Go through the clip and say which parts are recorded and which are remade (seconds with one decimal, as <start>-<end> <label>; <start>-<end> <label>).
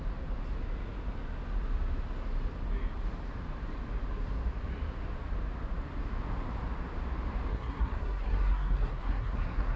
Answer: 0.0-7.5 recorded; 7.5-9.8 remade